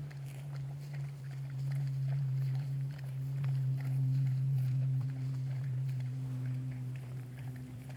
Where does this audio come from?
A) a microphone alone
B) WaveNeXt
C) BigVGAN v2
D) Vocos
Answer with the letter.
C